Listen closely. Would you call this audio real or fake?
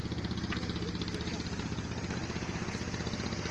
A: real